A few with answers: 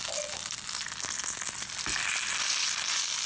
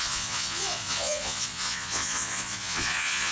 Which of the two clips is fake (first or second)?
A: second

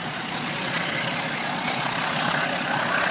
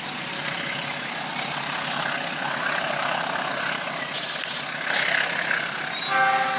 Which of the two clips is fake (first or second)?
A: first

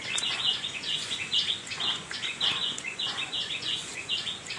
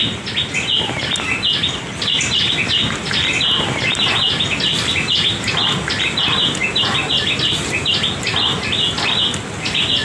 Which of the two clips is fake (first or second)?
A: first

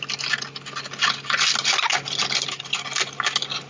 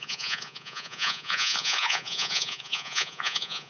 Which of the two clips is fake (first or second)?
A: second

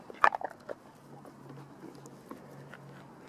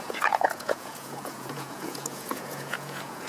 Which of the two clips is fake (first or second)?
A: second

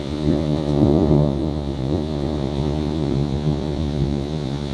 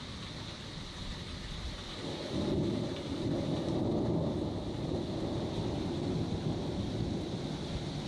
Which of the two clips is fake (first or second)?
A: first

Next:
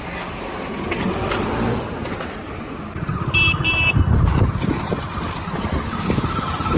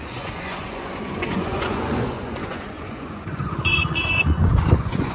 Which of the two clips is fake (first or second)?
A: second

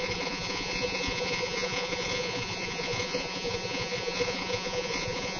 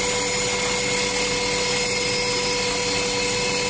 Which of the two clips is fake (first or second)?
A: first